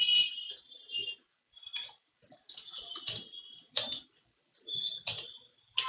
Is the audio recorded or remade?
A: recorded